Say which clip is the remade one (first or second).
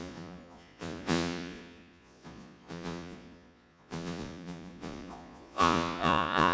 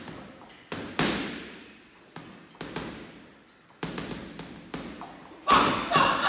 first